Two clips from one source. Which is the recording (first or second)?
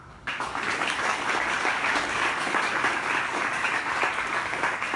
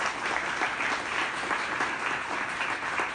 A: second